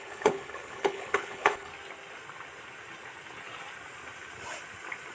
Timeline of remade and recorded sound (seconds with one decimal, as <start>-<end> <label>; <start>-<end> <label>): 0.0-1.7 remade; 1.7-5.1 recorded